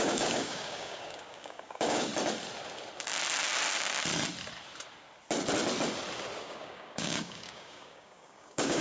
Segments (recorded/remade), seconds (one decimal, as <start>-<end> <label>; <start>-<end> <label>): 0.0-2.1 remade; 2.1-6.4 recorded; 6.4-8.8 remade